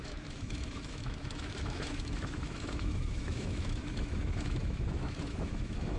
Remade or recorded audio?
remade